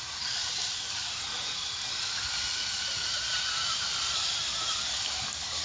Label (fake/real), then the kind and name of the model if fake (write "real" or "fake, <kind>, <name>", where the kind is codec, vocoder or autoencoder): real